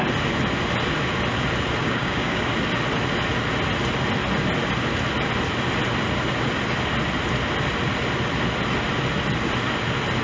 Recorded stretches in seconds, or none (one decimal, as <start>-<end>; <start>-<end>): 0.0-1.8; 2.5-10.2